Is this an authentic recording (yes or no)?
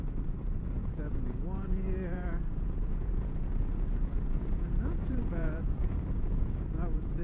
no